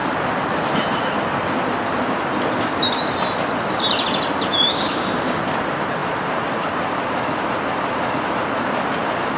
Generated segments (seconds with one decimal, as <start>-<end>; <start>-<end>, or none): 4.7-5.4